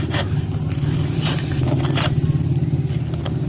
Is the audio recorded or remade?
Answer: recorded